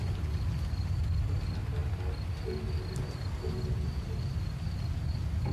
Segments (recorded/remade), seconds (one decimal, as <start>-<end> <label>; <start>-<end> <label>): 0.0-5.5 recorded